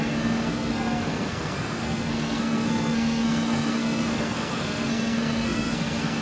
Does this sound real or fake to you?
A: fake